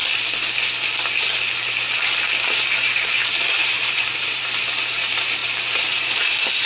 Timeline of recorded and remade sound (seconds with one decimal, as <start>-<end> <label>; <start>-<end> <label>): 0.0-2.5 recorded; 2.5-6.7 remade